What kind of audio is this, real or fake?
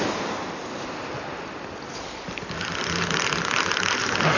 real